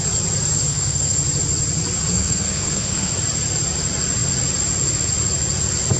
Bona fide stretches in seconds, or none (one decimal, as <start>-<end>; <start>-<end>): 0.0-0.7; 1.2-2.1; 3.1-6.0